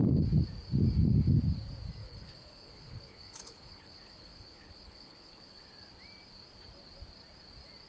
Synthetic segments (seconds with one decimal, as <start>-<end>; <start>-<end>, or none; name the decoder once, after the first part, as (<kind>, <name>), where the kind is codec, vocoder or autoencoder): 2.0-5.7 (codec, HILCodec)